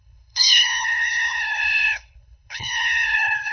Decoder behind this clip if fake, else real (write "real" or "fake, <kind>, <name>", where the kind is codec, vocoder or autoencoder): fake, codec, HILCodec